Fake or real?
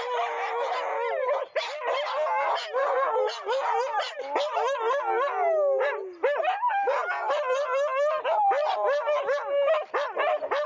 real